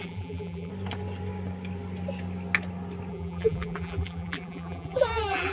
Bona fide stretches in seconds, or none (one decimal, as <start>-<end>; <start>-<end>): 0.7-3.1